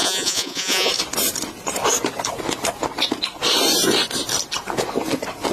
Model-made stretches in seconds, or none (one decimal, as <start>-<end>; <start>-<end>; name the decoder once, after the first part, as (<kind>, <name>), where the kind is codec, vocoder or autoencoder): 0.0-0.9 (vocoder, Vocos)

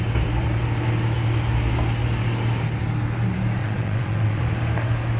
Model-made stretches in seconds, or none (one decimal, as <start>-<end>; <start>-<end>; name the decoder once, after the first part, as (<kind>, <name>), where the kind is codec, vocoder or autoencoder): 3.6-4.4 (vocoder, WaveNeXt)